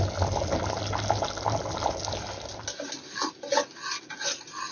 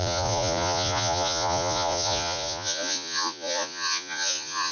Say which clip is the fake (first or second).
second